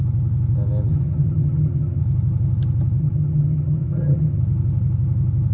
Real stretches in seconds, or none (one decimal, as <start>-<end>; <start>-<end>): 0.0-0.9; 2.0-3.0; 4.4-5.5